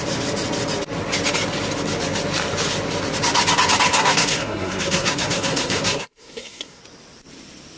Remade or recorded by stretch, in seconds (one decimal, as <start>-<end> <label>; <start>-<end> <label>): 0.0-3.9 recorded; 3.9-6.8 remade; 6.8-7.8 recorded